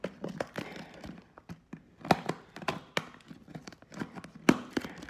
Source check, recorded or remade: recorded